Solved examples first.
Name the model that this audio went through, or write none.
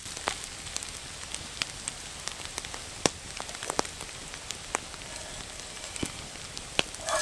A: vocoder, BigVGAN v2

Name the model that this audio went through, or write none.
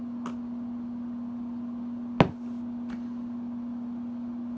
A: none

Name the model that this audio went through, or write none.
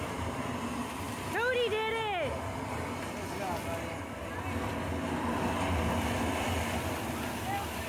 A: none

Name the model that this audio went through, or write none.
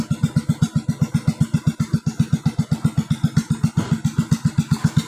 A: none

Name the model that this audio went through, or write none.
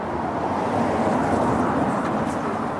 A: none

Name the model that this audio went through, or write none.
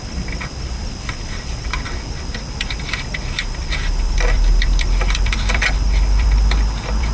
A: vocoder, BigVGAN v2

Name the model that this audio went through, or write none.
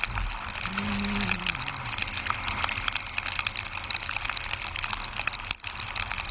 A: none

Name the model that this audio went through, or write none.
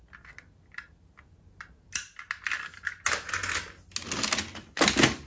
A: none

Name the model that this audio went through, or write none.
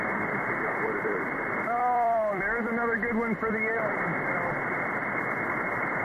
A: vocoder, BigVGAN v2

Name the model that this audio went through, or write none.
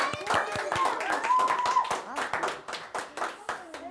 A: none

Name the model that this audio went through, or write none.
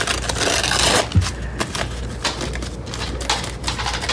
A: none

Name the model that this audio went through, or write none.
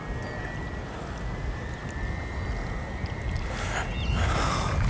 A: none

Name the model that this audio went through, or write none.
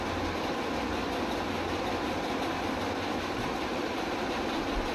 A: none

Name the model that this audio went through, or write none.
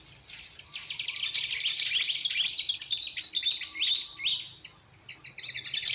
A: none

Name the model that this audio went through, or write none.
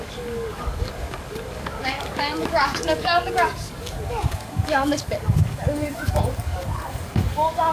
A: codec, DAC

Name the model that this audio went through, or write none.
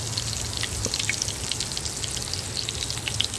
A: none